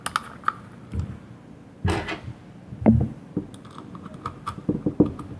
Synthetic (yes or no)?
no